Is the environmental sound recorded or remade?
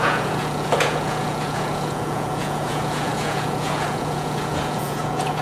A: remade